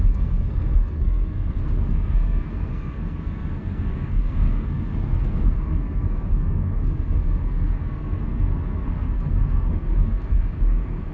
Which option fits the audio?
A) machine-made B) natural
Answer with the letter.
A